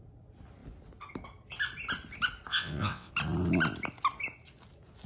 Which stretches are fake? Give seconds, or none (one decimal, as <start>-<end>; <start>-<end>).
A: 2.5-3.1